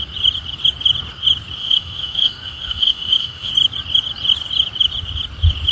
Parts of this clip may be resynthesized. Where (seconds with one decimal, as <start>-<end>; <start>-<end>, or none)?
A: 1.6-3.5